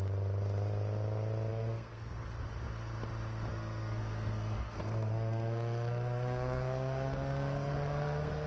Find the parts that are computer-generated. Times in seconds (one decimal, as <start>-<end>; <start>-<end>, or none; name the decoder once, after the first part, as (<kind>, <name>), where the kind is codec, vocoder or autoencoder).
1.5-2.2 (codec, SNAC); 3.5-8.5

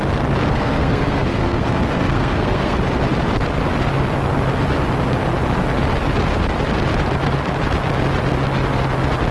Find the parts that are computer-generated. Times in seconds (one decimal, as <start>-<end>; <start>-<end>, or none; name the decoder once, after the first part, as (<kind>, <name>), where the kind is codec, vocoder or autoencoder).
0.5-2.8 (codec, SNAC)

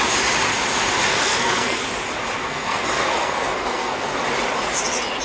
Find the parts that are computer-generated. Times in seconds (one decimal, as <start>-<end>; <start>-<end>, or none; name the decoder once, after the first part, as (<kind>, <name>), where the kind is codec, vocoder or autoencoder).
1.1-1.8 (codec, SNAC); 2.4-4.2

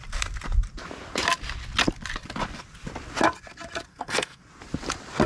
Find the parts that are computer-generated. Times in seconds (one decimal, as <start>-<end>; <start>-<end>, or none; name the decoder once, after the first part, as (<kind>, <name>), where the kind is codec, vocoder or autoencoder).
3.9-4.4 (codec, SNAC)

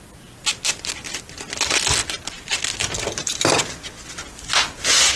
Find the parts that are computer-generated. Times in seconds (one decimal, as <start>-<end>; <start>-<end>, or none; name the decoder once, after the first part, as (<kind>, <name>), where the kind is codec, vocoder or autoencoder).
none

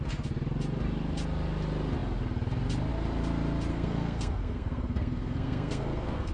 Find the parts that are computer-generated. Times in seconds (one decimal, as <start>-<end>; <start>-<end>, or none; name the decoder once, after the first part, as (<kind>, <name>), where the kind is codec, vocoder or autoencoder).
3.7-6.3 (codec, SNAC)

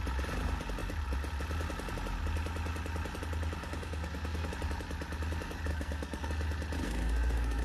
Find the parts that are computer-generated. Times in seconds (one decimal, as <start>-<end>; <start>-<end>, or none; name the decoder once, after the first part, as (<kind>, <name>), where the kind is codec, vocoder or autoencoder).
3.6-4.5 (codec, SNAC); 5.7-6.3; 6.8-7.6

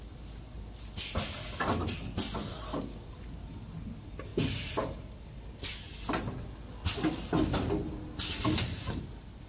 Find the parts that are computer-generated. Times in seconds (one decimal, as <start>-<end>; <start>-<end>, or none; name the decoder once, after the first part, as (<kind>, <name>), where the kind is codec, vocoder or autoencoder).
none